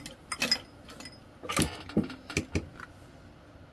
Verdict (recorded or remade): recorded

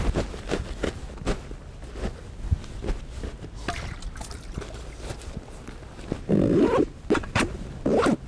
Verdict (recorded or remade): recorded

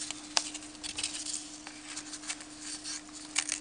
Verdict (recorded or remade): recorded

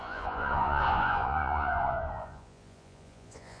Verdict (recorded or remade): remade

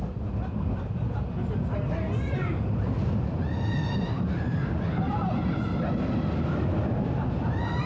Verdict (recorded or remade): recorded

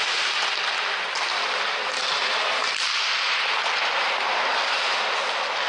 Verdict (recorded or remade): recorded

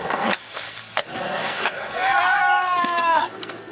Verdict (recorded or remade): remade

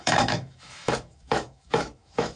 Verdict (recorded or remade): remade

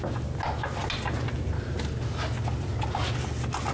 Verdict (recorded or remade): recorded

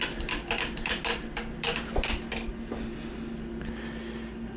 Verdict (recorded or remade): recorded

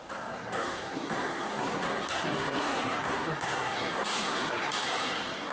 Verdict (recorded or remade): remade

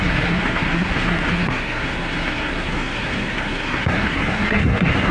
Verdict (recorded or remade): remade